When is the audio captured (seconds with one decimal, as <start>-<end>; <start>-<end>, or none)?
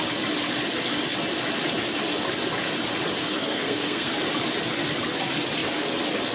0.0-3.2; 4.1-6.3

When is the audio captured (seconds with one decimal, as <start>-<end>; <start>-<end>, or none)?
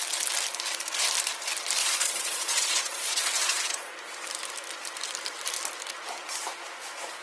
0.0-1.8; 3.9-7.2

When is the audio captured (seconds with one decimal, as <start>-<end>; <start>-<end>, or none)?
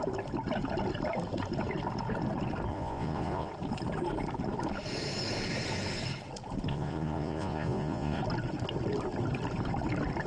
0.0-2.7; 3.5-6.7; 8.2-10.3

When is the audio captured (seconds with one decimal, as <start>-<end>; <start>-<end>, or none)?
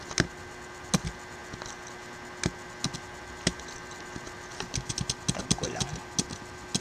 0.0-6.8